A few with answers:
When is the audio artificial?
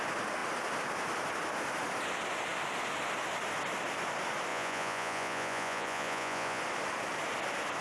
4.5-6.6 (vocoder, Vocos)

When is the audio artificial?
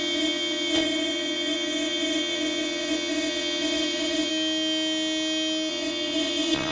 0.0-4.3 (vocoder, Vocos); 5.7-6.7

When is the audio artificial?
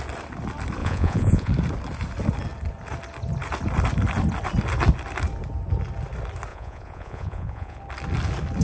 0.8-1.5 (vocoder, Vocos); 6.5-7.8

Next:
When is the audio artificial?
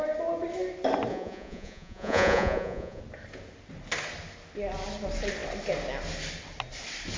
1.1-3.0 (vocoder, Vocos)